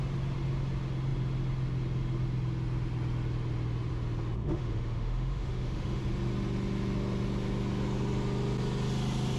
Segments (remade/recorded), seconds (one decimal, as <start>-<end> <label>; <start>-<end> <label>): 0.0-4.4 recorded; 4.4-6.0 remade; 6.0-9.4 recorded